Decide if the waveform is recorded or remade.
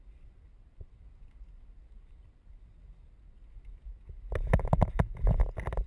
recorded